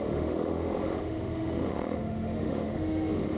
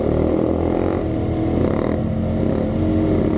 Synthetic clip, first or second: first